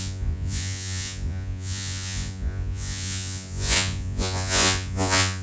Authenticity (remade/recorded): remade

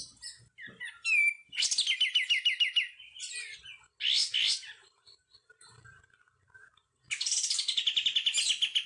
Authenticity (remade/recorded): recorded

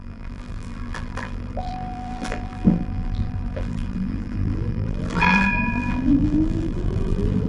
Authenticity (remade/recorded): remade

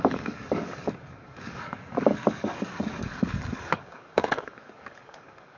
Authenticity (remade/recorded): remade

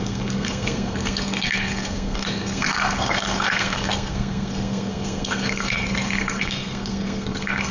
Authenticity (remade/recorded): remade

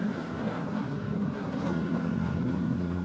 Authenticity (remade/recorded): remade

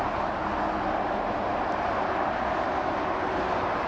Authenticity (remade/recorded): recorded